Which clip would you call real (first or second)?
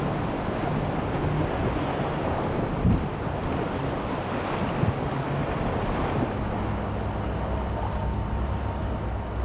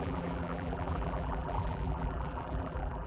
first